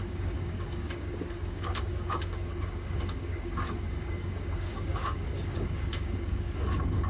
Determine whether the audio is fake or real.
fake